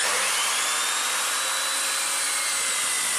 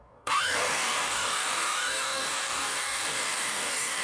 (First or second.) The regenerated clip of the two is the second